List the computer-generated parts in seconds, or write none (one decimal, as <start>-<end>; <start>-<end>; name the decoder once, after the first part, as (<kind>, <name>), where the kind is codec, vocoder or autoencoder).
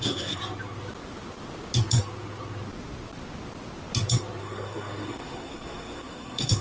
0.0-0.4 (codec, SNAC); 4.4-6.6